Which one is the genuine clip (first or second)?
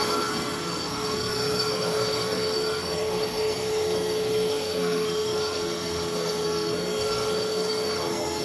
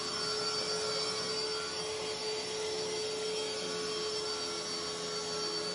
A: second